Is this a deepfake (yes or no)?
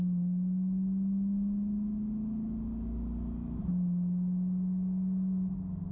no